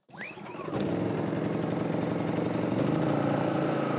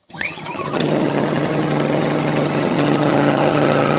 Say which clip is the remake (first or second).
second